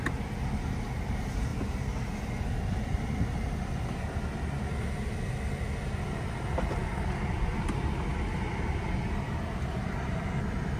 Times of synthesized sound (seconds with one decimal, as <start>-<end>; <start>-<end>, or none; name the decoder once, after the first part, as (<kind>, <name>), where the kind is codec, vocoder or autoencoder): none